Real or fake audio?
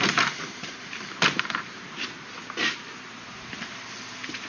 fake